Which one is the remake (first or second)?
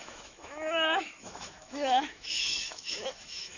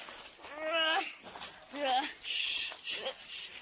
first